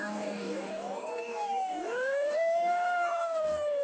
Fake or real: fake